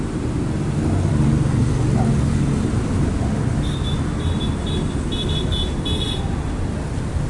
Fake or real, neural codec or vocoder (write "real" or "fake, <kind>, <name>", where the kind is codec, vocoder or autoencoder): real